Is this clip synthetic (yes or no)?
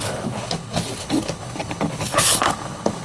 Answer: yes